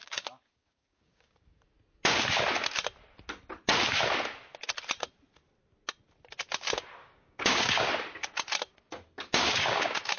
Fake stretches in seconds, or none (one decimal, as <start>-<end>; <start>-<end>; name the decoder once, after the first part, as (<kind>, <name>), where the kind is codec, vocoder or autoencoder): 0.0-1.6 (codec, DAC); 7.0-7.9; 9.3-10.2